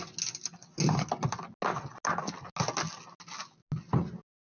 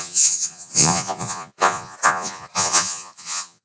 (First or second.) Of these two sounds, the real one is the first